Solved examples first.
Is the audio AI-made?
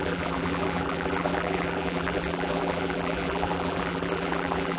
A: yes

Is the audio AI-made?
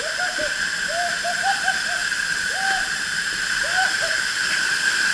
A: no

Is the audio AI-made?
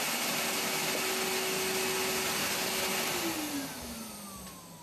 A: no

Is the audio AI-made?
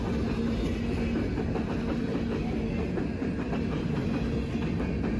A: no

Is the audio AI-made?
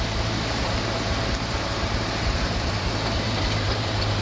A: yes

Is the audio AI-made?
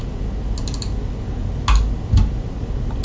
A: no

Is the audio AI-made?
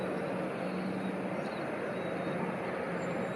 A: no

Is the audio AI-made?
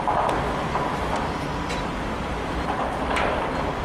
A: yes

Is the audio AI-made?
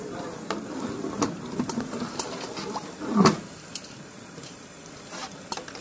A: yes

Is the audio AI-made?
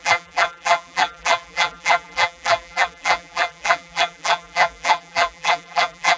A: yes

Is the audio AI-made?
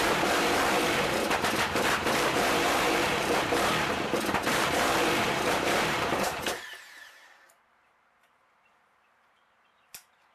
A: yes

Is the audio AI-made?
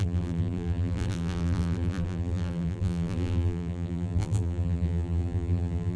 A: yes